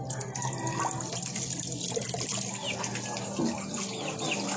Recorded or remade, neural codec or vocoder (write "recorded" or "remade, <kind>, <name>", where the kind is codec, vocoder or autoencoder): recorded